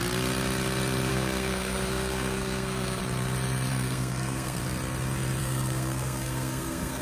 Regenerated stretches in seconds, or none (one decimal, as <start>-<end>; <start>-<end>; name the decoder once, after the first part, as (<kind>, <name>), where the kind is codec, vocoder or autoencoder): 1.1-3.0 (codec, SNAC); 3.7-4.6; 5.4-7.0